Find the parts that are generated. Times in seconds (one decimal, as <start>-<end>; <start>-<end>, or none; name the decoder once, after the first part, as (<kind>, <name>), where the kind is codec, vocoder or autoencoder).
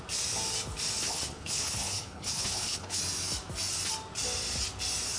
1.1-3.0 (codec, HILCodec)